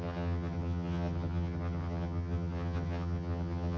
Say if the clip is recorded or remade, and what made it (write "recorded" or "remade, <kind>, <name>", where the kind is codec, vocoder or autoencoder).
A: remade, vocoder, HiFi-GAN